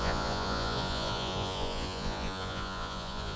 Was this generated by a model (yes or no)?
yes